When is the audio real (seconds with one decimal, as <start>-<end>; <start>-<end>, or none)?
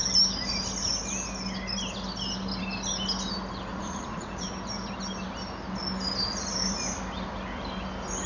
0.0-3.7; 4.5-8.3